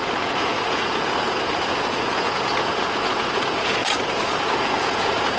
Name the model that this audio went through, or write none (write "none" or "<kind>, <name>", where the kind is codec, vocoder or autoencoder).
vocoder, Vocos